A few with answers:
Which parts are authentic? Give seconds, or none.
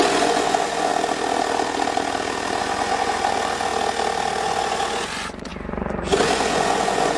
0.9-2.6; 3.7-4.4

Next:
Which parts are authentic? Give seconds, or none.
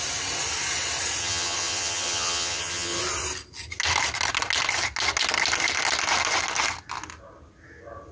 0.0-1.2; 3.0-8.1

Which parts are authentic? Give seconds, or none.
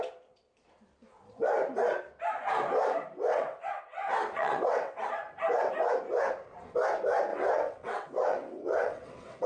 0.0-3.3; 5.1-7.3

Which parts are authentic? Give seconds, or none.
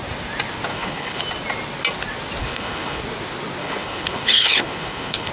0.0-0.7; 1.2-2.4; 3.0-3.6